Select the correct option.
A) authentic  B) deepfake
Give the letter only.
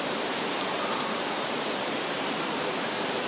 A